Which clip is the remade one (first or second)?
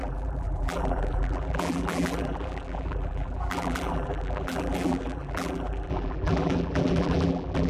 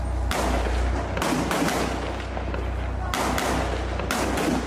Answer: first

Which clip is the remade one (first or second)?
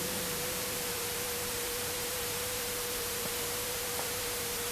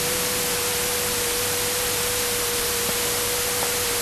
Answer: first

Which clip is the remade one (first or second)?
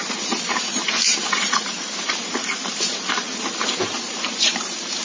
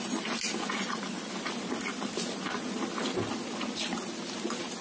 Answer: first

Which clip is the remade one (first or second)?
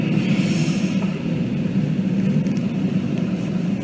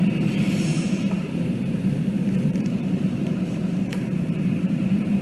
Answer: second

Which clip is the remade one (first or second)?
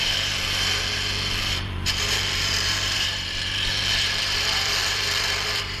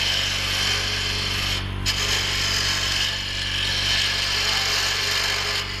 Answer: first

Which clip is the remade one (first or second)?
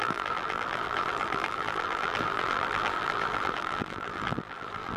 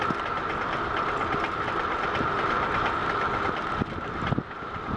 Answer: first